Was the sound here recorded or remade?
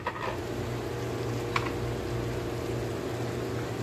recorded